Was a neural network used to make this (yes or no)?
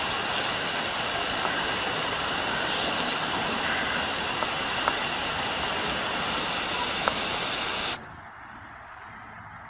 no